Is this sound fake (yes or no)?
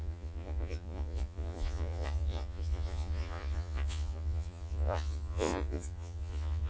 yes